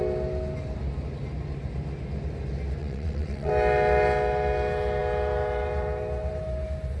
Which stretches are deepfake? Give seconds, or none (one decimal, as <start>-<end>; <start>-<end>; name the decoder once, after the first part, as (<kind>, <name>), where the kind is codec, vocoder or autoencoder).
2.8-3.5 (vocoder, WaveNeXt)

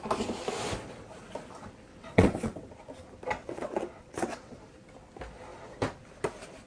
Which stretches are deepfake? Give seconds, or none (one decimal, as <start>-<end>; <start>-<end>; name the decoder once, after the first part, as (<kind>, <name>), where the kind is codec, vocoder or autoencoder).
1.9-2.7 (vocoder, WaveNeXt); 3.4-4.6

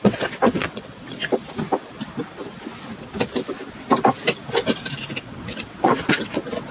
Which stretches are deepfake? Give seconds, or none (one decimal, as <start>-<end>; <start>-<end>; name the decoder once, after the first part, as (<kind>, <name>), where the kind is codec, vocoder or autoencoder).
0.0-1.2 (vocoder, WaveNeXt); 5.2-6.7

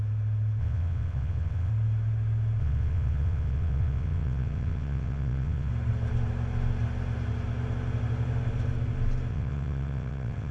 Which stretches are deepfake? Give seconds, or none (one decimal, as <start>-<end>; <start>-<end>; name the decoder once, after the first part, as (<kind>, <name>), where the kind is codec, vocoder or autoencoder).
0.6-1.7 (vocoder, WaveNeXt); 2.6-5.7; 9.3-10.5